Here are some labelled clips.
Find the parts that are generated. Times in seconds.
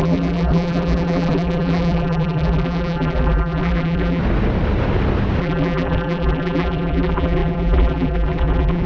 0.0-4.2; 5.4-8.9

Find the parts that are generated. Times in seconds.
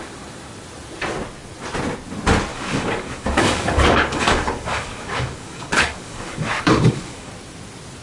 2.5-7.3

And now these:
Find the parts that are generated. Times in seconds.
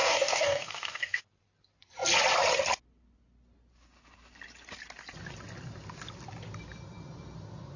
0.0-1.2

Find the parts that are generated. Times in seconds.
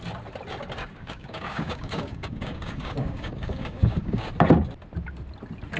0.8-4.3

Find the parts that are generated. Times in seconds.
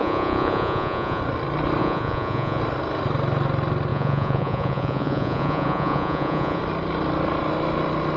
0.0-1.2; 1.8-2.6; 3.9-6.6